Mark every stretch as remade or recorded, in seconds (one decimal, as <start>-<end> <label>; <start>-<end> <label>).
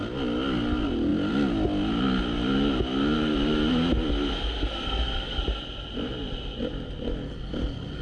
0.0-4.3 recorded; 4.3-5.4 remade; 5.4-8.0 recorded